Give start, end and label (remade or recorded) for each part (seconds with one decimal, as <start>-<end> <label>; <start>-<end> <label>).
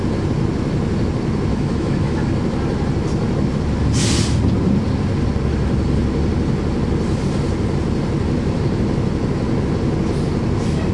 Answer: 0.0-1.5 recorded; 1.5-2.3 remade; 2.3-10.9 recorded